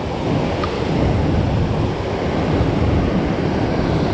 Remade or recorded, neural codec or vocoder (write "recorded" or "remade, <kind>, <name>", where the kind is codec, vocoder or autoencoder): recorded